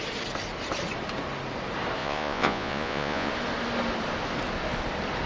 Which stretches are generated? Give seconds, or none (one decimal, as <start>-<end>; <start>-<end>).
2.0-3.3